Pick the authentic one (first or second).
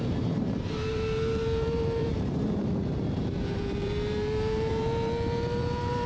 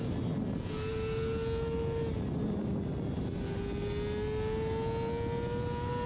second